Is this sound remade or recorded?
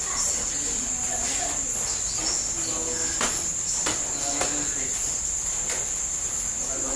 recorded